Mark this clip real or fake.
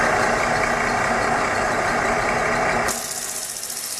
real